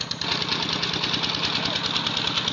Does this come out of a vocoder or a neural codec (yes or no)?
no